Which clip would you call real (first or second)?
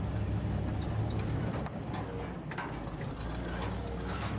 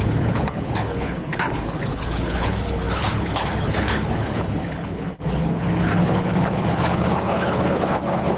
first